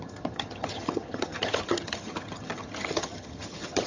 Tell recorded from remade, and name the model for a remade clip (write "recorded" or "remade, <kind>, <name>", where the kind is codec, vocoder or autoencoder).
remade, vocoder, HiFi-GAN